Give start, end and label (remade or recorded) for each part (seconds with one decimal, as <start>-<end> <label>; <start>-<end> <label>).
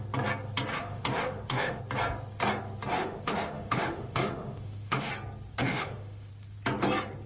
0.0-0.7 recorded; 0.7-1.8 remade; 1.8-2.9 recorded; 2.9-5.1 remade; 5.1-5.6 recorded; 5.6-6.3 remade; 6.3-7.3 recorded